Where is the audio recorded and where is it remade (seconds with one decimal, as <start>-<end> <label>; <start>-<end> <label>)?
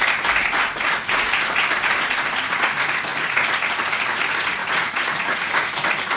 0.0-4.6 recorded; 4.6-5.5 remade; 5.5-6.2 recorded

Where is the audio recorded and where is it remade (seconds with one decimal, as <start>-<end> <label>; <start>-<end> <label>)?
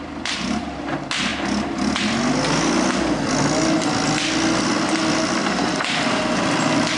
0.0-7.0 recorded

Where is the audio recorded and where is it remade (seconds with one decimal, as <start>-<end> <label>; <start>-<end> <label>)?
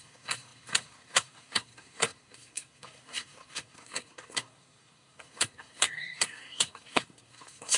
0.0-7.8 remade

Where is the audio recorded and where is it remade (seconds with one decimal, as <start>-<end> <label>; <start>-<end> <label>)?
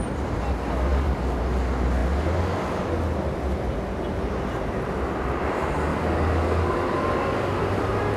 0.0-0.9 recorded; 0.9-1.4 remade; 1.4-5.9 recorded; 5.9-7.6 remade; 7.6-8.2 recorded